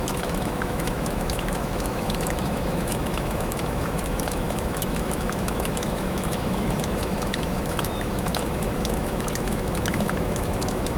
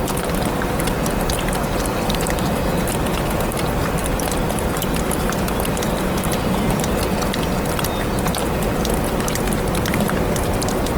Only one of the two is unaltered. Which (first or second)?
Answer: second